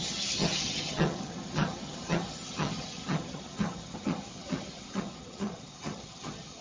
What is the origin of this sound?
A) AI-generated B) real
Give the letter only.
A